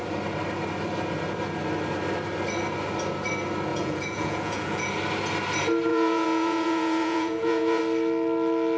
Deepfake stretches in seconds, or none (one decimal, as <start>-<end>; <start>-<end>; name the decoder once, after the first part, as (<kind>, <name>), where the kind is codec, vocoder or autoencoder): 3.7-4.9 (vocoder, Vocos); 5.9-7.8